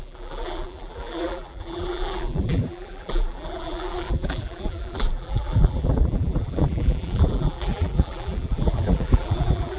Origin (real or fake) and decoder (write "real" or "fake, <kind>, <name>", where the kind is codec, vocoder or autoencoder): fake, vocoder, BigVGAN v2